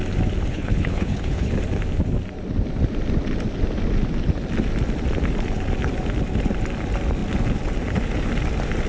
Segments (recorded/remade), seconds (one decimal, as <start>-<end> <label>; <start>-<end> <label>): 0.0-0.5 recorded; 0.5-1.5 remade; 1.5-8.9 recorded